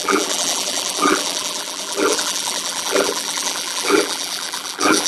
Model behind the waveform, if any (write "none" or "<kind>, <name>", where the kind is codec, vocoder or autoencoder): vocoder, BigVGAN v2